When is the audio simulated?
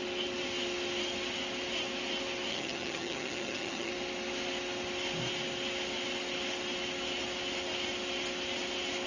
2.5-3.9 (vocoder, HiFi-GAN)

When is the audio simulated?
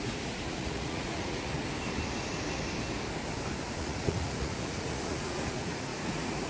0.0-1.6 (vocoder, Vocos); 3.8-6.5